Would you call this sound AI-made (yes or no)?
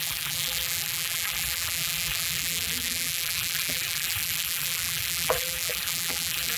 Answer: yes